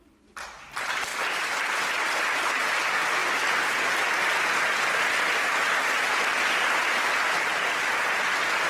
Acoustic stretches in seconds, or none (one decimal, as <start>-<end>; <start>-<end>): 3.2-7.9